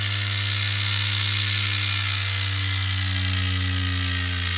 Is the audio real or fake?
real